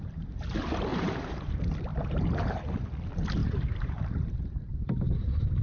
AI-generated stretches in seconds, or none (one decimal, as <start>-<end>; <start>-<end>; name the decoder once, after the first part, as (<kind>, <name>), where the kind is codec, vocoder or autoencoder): 0.9-1.5 (vocoder, BigVGAN v2); 1.9-2.7; 3.4-4.4